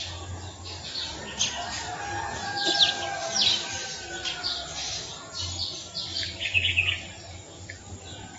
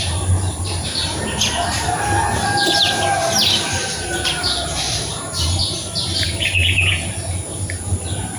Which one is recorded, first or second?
first